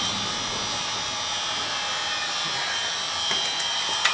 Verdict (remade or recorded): recorded